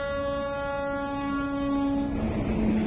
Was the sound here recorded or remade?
recorded